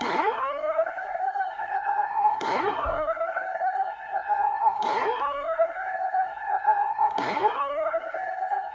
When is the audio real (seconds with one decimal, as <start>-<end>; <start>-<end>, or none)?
none